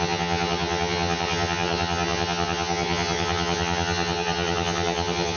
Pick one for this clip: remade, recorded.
remade